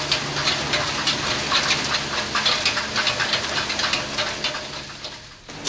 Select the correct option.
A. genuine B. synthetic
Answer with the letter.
A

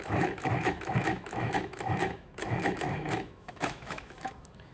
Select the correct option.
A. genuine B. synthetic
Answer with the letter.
B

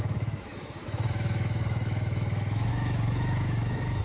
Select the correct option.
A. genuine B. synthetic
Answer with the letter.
B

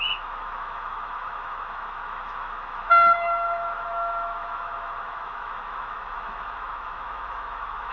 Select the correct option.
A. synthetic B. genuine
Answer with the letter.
A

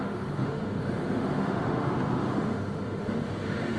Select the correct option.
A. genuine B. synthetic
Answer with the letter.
B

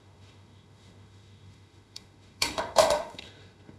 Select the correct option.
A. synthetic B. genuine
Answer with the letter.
A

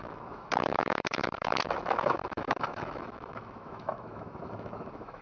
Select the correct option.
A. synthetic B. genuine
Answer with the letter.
A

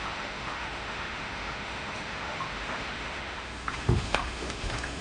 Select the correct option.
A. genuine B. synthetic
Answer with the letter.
B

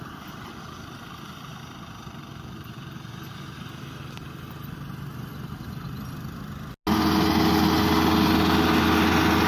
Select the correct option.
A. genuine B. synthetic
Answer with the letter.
A